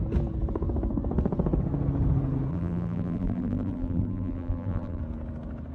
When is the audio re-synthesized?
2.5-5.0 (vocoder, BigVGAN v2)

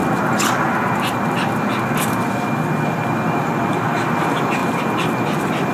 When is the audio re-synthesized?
3.4-5.7 (vocoder, BigVGAN v2)

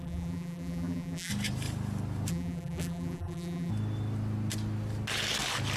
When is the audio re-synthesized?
0.0-1.3 (vocoder, BigVGAN v2); 2.3-3.7

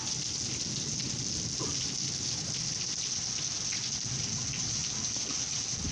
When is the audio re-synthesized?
none

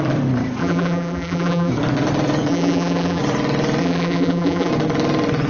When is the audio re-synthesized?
0.6-1.7 (vocoder, BigVGAN v2); 2.5-3.2; 3.8-4.7

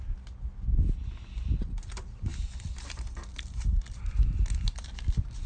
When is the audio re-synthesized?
none